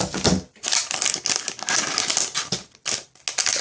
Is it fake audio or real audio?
real